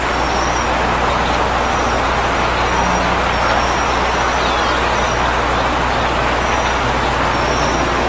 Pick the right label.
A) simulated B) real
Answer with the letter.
B